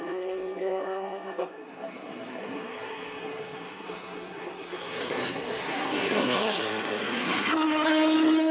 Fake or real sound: fake